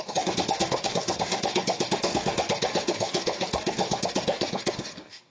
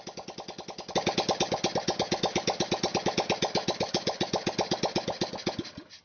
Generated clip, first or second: first